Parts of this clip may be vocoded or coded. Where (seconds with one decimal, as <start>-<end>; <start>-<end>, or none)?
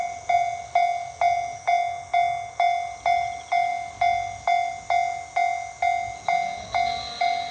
none